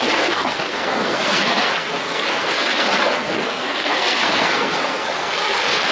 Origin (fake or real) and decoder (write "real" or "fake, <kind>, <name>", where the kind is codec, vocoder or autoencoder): fake, codec, SNAC